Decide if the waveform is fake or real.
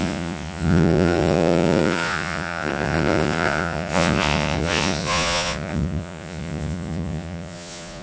fake